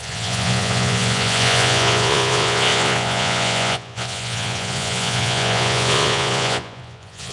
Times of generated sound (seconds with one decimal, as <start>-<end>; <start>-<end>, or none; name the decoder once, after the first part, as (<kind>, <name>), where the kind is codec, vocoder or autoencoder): 0.0-7.3 (vocoder, Vocos)